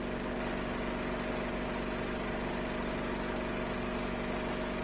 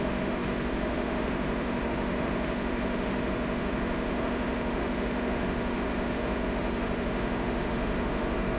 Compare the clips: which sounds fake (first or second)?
second